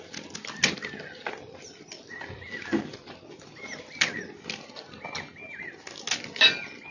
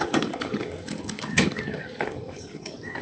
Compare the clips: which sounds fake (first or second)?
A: second